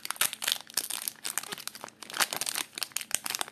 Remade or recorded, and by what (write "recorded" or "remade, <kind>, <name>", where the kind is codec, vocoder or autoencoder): recorded